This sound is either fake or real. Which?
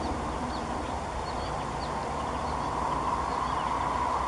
real